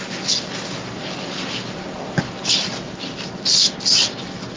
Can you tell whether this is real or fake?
real